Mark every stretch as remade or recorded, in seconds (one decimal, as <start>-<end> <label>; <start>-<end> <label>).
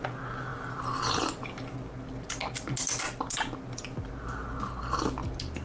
0.0-5.6 recorded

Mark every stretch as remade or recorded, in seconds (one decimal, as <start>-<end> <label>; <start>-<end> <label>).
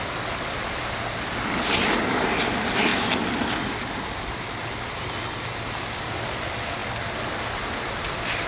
0.0-8.5 recorded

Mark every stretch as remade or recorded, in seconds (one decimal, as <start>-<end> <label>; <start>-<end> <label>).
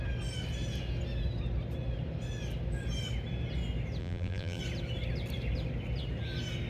0.0-4.0 recorded; 4.0-4.6 remade; 4.6-6.7 recorded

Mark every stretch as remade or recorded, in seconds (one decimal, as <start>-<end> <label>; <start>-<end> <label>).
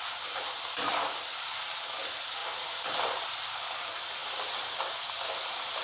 0.0-5.8 recorded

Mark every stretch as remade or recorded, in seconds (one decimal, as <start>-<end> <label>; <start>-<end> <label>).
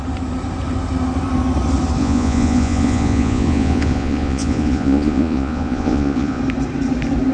0.0-2.0 recorded; 2.0-6.4 remade; 6.4-7.3 recorded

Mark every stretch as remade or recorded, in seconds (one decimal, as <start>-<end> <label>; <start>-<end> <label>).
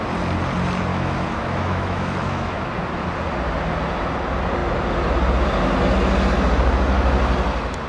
0.0-0.9 recorded; 0.9-2.7 remade; 2.7-7.9 recorded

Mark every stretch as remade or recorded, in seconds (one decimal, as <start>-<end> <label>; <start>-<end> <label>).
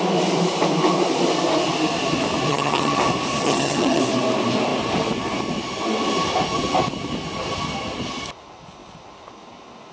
0.0-2.5 recorded; 2.5-3.0 remade; 3.0-3.4 recorded; 3.4-4.0 remade; 4.0-9.9 recorded